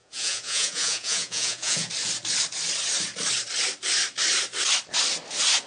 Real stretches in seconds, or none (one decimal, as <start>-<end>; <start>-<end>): 1.9-5.7